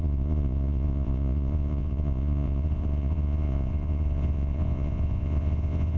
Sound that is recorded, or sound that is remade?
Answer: remade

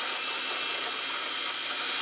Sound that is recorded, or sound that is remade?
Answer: recorded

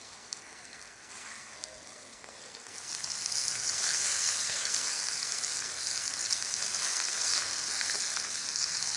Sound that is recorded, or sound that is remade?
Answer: remade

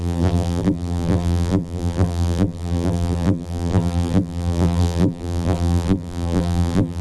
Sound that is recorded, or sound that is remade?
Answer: remade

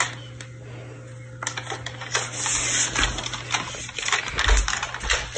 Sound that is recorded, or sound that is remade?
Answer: recorded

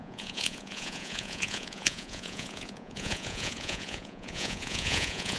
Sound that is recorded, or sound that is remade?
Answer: remade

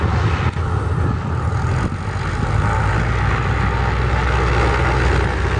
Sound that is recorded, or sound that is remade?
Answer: recorded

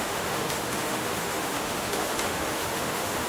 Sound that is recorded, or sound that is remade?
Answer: remade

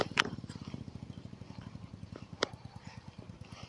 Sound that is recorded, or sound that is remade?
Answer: remade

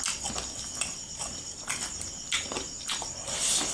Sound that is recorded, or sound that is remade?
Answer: recorded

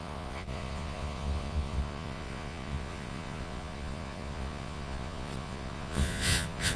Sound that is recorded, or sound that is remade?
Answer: remade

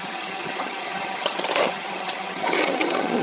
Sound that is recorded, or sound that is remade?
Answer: remade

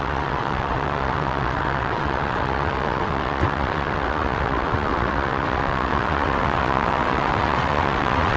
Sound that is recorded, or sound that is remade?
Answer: remade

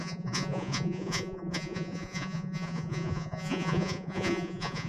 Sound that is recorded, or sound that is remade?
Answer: remade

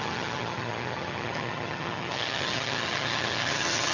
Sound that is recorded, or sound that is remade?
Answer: remade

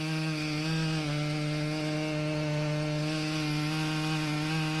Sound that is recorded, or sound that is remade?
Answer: recorded